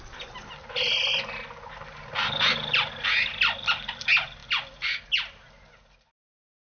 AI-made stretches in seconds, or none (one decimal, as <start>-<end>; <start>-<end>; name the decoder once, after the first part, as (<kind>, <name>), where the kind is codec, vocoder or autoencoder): none